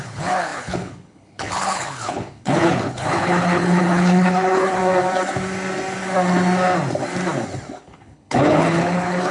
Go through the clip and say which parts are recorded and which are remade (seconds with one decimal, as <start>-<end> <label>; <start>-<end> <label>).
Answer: 0.0-4.8 remade; 4.8-7.8 recorded; 7.8-9.3 remade